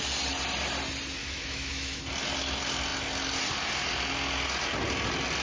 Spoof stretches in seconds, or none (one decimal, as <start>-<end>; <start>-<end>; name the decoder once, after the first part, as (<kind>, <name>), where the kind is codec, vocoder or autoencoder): 1.2-2.0 (autoencoder, DAC-VAE)